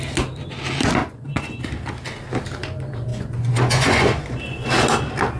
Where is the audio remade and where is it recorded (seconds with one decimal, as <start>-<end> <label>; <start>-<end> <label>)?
0.0-1.0 recorded; 1.0-1.6 remade; 1.6-3.1 recorded; 3.1-4.7 remade; 4.7-5.4 recorded